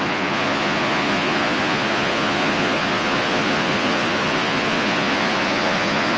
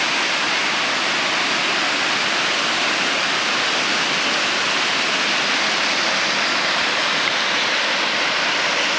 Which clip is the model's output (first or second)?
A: first